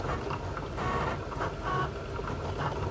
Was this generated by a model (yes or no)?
no